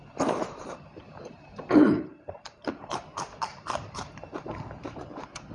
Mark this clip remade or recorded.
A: remade